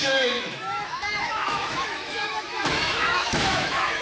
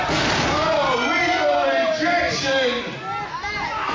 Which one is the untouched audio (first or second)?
second